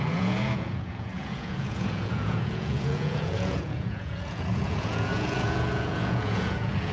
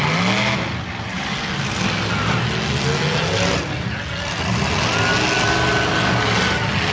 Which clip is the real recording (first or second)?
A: second